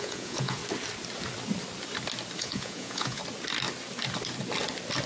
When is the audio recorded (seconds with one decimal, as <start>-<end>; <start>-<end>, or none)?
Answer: 0.6-2.4; 3.2-5.1